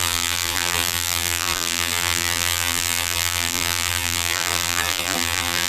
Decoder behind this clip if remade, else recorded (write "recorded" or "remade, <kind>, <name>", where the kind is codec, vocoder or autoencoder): remade, vocoder, BigVGAN v2